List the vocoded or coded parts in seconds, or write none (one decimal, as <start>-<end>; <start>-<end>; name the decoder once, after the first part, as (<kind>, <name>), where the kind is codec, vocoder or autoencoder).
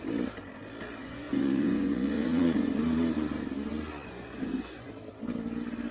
1.0-2.7 (vocoder, Vocos); 3.7-4.9